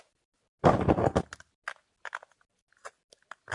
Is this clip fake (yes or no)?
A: no